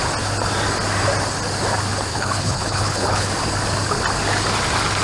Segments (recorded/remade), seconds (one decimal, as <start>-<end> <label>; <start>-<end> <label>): 0.0-2.1 recorded; 2.1-3.3 remade; 3.3-5.0 recorded